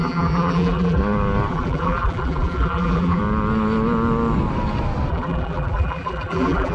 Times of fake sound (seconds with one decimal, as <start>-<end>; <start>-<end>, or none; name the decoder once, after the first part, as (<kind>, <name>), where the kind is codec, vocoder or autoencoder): 0.0-1.0 (vocoder, BigVGAN v2); 1.5-3.2; 5.1-6.7